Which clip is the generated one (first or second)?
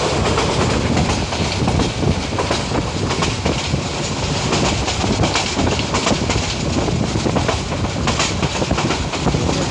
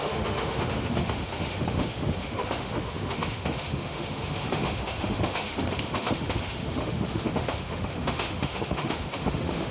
second